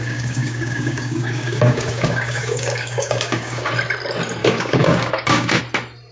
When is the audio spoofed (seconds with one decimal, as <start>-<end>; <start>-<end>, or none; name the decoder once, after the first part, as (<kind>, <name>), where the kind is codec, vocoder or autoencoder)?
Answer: 0.0-3.7 (codec, DAC); 4.4-5.6